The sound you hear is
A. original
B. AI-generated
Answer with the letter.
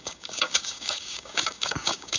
B